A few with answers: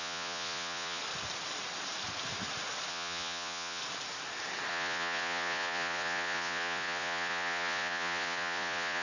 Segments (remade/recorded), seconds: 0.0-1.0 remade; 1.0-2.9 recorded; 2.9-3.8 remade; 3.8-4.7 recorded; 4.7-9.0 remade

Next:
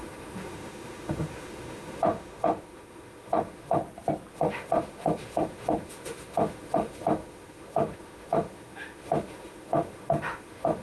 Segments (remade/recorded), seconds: 0.0-3.8 remade; 3.8-4.3 recorded; 4.3-10.8 remade

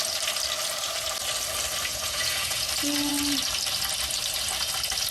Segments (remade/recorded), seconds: 0.0-1.9 recorded; 1.9-2.7 remade; 2.7-5.1 recorded